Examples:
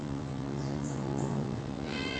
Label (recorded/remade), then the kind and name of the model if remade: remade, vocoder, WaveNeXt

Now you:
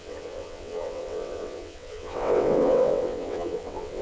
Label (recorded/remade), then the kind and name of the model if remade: remade, vocoder, WaveNeXt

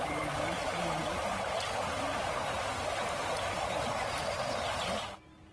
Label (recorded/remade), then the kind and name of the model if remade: recorded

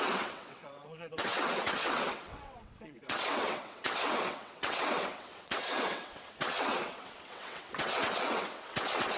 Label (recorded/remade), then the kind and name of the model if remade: remade, vocoder, WaveNeXt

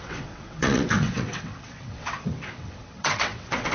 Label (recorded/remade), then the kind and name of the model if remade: remade, vocoder, WaveNeXt